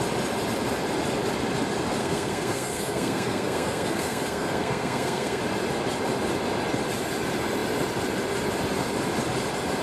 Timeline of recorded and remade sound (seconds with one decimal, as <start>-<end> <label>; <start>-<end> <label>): 0.0-2.0 recorded; 2.0-5.4 remade; 5.4-9.8 recorded